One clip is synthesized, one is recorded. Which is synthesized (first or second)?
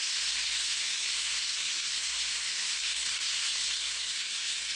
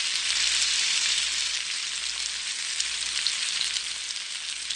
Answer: first